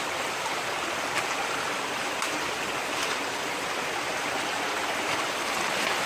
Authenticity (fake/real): real